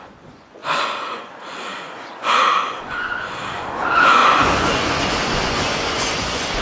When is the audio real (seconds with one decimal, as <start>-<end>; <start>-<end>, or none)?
none